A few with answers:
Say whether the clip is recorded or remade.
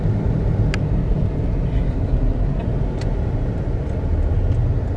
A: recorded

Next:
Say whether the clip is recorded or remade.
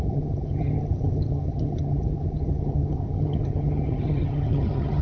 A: remade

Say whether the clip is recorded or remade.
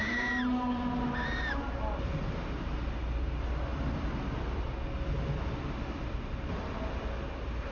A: recorded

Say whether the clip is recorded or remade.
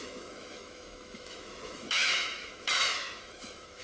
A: remade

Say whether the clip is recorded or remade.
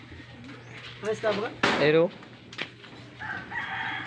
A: recorded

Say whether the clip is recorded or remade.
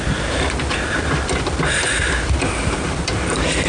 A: remade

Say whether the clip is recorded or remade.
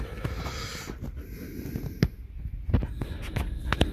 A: recorded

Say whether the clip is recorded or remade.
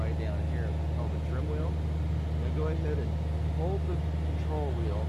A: recorded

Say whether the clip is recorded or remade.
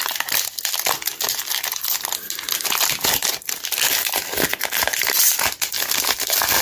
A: recorded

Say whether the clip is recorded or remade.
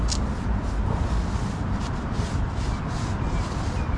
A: recorded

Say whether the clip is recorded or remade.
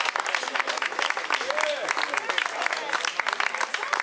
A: recorded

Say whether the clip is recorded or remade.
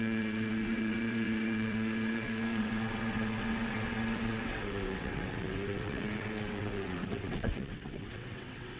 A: remade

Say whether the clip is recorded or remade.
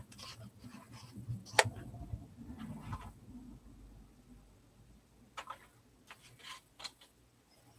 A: recorded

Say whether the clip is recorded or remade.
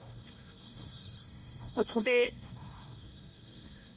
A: remade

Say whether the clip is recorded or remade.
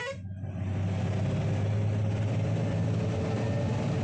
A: recorded